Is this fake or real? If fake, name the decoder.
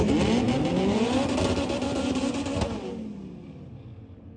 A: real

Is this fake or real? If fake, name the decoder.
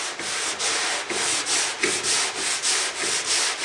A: real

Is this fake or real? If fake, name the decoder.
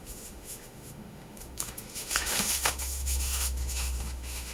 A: fake, autoencoder, DAC-VAE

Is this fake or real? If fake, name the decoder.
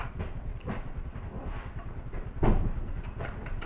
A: real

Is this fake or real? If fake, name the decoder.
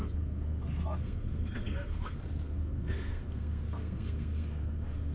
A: fake, codec, SNAC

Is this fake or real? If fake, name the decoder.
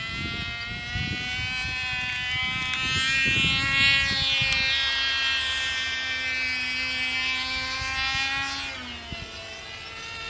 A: real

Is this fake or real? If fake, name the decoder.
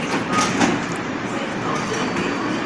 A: real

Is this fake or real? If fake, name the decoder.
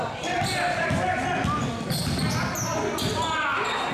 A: real